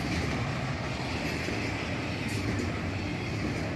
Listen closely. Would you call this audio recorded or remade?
recorded